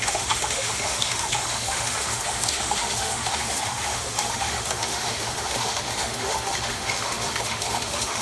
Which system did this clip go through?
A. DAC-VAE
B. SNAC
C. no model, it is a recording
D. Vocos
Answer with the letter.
A